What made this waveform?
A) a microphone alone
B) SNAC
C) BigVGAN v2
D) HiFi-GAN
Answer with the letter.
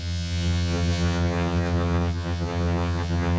D